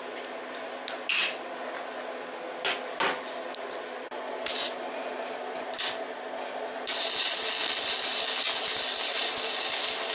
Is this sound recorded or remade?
recorded